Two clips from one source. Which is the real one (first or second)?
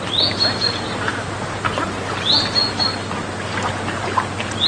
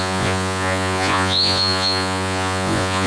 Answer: first